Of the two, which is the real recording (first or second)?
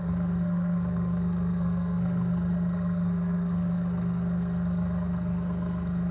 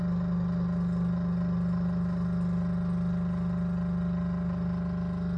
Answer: second